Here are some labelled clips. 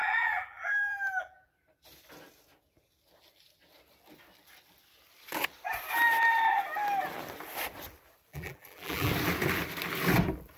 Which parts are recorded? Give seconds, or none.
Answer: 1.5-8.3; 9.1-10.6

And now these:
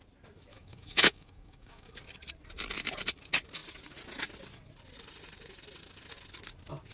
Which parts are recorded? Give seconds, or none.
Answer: 0.0-0.5; 1.9-6.9

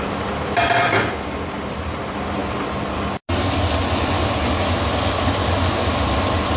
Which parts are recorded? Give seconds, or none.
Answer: 0.0-6.6

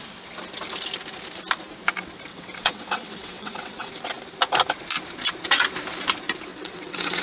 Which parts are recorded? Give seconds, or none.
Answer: 0.0-2.3; 3.9-6.5

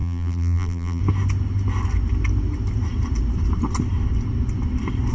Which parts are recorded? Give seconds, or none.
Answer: 1.0-5.1

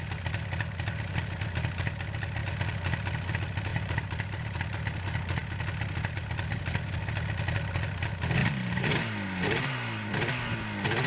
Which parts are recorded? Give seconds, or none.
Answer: 0.0-3.7; 4.6-8.4; 10.1-11.1

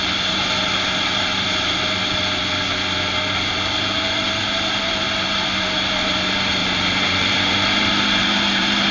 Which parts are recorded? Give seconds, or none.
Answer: 2.0-3.5

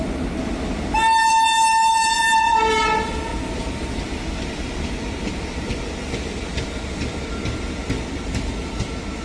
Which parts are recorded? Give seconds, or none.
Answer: 0.0-3.3; 4.0-9.2